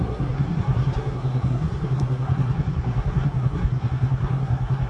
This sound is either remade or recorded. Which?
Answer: remade